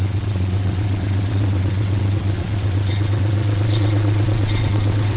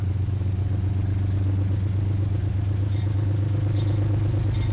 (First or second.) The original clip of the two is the second